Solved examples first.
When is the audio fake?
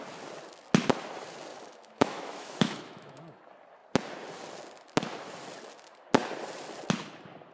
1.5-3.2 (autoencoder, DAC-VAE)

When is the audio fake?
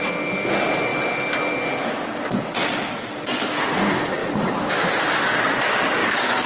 none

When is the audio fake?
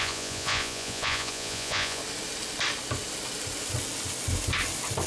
0.0-2.0 (vocoder, Vocos)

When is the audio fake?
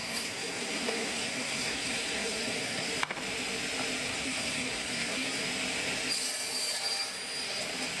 0.0-2.9 (codec, SNAC); 4.1-5.4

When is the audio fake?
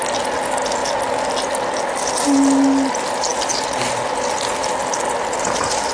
none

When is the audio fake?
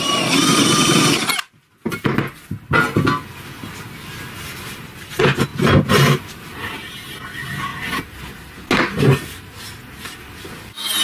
none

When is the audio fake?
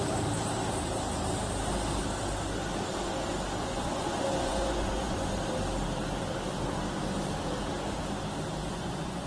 3.6-5.4 (vocoder, Vocos); 8.7-9.3